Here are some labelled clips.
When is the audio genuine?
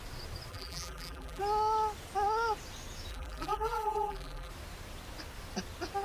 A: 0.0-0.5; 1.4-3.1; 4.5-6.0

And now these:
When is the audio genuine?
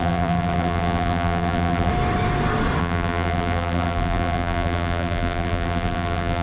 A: 1.9-2.8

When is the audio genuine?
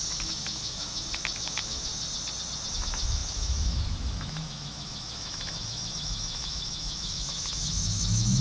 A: 1.9-2.7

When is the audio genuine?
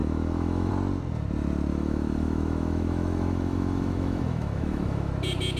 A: 0.7-1.7; 5.1-5.6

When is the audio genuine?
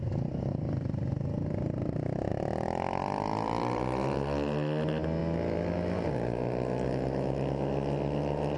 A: 0.0-8.6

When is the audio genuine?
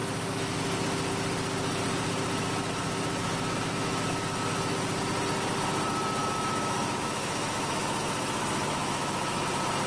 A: 0.6-3.2; 4.2-6.2; 9.4-9.9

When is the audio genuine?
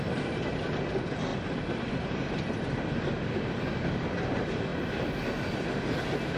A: 0.0-1.3; 1.9-4.7; 6.0-6.4